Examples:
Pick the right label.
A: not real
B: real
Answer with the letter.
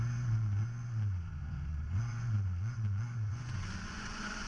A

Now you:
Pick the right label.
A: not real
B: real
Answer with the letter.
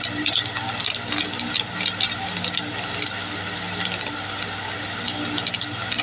B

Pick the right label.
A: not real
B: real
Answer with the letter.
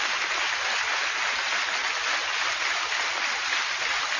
B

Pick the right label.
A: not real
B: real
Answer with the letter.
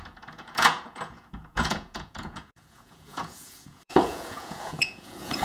A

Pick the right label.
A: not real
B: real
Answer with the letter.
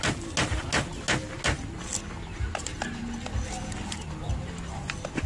B